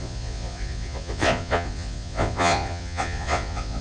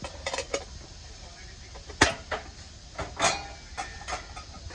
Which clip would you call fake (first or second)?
first